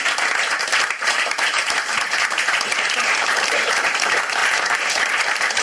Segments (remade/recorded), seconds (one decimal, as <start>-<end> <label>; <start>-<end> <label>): 0.0-5.6 remade